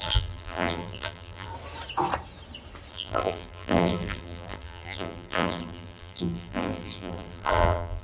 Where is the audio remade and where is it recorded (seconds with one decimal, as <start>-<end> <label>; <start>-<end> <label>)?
0.0-1.5 remade; 1.5-2.9 recorded; 2.9-8.0 remade